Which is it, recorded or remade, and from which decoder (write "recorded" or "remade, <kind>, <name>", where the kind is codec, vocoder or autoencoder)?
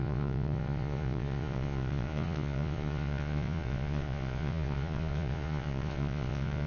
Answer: remade, vocoder, Vocos